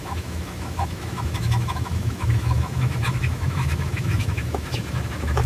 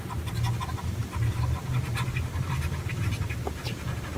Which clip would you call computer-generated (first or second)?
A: first